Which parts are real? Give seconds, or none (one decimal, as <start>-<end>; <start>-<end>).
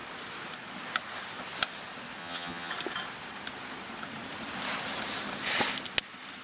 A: 0.0-2.2; 2.7-6.4